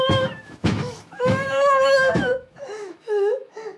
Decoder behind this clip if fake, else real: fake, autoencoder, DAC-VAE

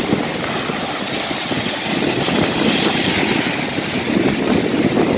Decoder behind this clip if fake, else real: real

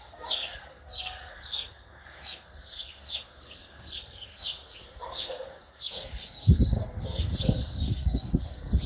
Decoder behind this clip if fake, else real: fake, codec, SNAC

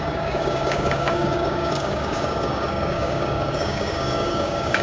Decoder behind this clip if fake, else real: fake, codec, DAC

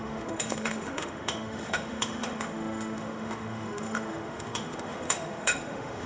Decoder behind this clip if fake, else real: fake, autoencoder, DAC-VAE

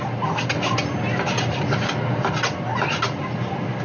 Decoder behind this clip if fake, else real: real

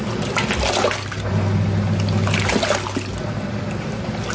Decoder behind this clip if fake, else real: real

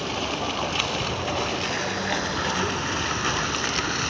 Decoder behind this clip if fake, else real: real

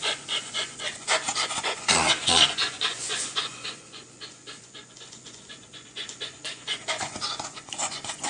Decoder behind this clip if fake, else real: fake, vocoder, Vocos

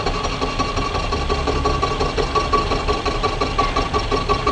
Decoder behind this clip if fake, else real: real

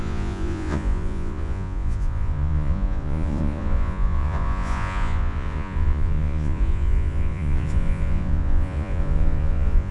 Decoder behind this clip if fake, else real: fake, vocoder, Vocos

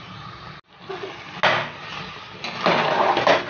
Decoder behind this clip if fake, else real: real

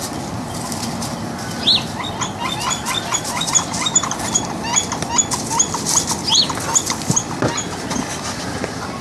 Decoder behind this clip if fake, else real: real